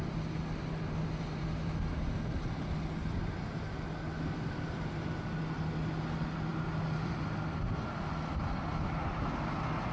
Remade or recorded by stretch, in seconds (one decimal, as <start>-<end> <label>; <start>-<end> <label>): 0.0-3.0 recorded; 3.0-3.7 remade; 3.7-9.9 recorded